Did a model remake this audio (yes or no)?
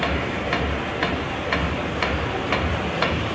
no